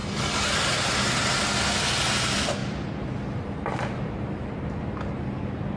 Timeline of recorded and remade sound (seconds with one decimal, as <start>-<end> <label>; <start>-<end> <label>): 0.0-5.8 recorded